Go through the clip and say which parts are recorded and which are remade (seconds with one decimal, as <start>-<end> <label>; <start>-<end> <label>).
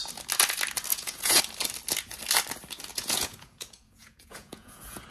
0.0-0.9 recorded; 0.9-1.4 remade; 1.4-2.9 recorded; 2.9-5.1 remade